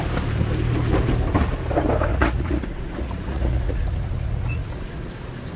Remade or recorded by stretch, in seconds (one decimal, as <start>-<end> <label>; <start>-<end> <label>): 0.0-2.1 recorded; 2.1-5.1 remade; 5.1-5.6 recorded